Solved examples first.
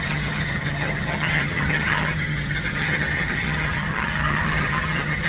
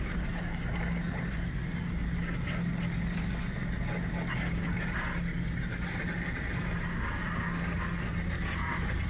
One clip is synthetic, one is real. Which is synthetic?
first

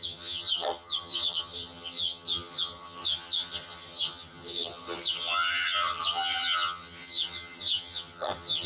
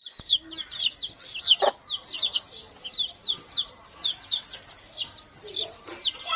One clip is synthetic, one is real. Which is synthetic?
first